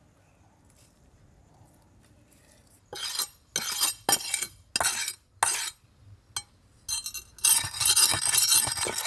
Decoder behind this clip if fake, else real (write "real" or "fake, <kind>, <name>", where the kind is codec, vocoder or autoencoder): real